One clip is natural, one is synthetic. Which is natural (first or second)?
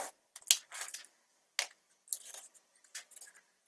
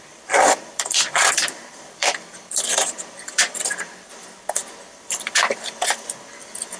first